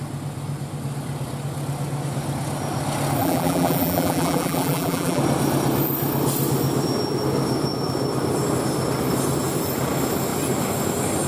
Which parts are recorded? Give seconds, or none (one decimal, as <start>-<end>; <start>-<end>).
0.0-3.2; 5.2-11.3